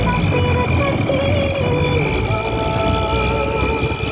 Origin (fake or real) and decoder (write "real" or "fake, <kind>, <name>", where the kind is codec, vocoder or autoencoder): real